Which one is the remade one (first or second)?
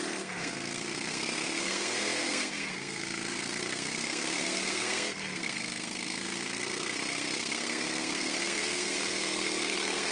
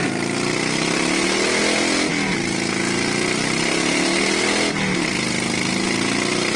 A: first